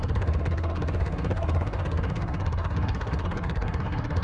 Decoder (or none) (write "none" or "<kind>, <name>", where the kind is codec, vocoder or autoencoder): codec, SNAC